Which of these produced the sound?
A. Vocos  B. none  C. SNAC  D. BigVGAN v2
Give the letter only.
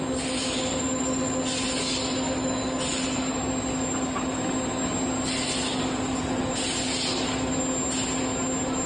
B